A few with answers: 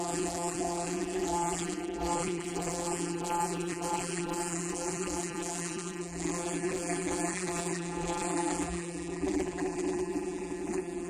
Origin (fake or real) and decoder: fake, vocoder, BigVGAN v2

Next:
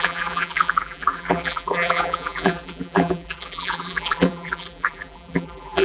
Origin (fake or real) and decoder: fake, vocoder, BigVGAN v2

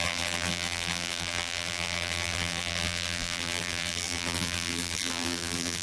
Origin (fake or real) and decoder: fake, vocoder, BigVGAN v2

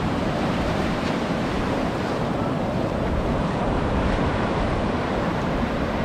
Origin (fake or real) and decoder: fake, vocoder, BigVGAN v2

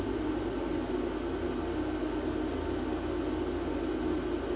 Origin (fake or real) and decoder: real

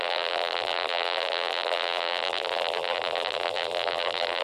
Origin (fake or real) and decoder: fake, vocoder, BigVGAN v2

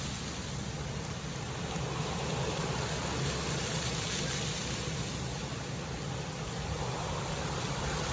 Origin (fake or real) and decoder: real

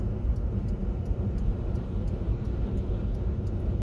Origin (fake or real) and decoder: fake, vocoder, BigVGAN v2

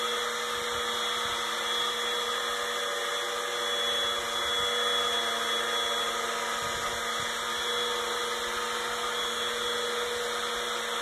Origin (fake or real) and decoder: real